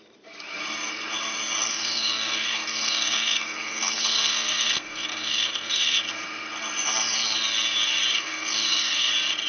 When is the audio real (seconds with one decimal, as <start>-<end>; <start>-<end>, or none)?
0.0-1.7; 6.0-8.1; 9.1-9.5